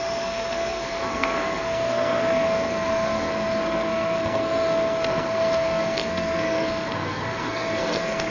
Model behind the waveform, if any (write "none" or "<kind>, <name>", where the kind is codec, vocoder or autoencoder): codec, SNAC